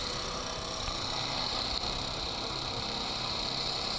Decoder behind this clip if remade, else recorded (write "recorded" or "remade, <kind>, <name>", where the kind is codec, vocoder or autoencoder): remade, vocoder, BigVGAN v2